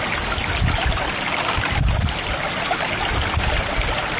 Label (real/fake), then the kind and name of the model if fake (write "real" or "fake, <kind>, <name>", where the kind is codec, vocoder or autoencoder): real